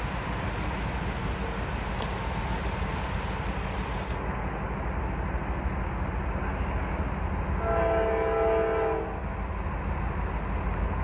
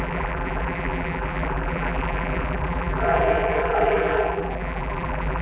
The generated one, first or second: second